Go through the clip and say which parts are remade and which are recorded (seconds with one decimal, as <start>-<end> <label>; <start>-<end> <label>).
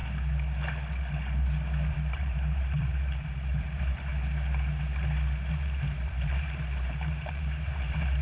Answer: 0.0-1.9 recorded; 1.9-4.1 remade; 4.1-5.5 recorded; 5.5-8.2 remade